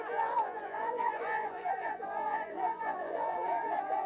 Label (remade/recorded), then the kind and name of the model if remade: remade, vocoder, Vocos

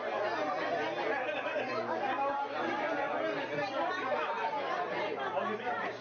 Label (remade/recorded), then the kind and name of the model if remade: recorded